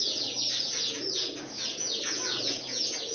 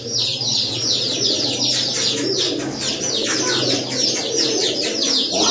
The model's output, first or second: first